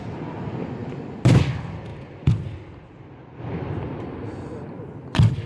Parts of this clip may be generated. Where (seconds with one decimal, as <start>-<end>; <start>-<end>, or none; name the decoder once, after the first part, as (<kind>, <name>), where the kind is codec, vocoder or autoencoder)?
none